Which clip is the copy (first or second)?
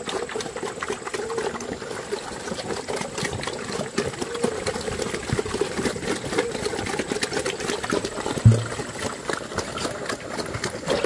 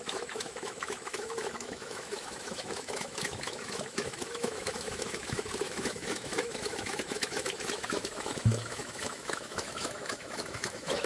second